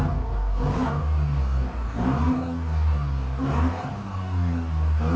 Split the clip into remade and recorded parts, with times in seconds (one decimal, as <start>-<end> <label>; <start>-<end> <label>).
0.0-5.2 remade